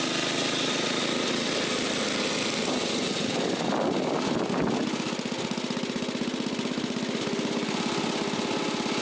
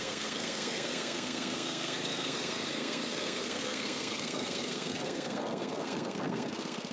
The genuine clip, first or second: first